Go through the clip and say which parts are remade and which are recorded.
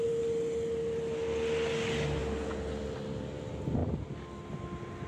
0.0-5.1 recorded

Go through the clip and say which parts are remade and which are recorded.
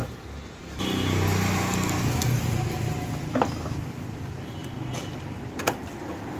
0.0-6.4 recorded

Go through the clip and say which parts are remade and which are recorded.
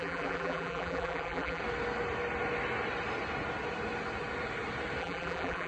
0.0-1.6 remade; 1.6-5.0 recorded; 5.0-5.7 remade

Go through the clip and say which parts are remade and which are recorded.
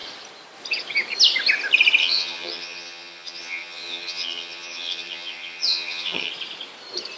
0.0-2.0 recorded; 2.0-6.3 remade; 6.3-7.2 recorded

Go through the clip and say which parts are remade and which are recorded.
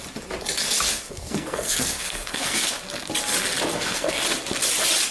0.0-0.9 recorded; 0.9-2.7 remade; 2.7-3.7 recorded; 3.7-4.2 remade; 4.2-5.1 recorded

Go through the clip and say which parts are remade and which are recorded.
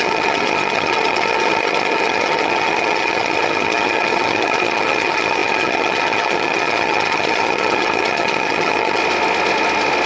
0.0-9.0 remade; 9.0-10.1 recorded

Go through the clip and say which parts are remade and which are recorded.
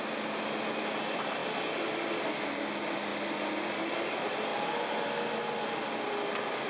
0.0-1.4 recorded; 1.4-2.1 remade; 2.1-6.7 recorded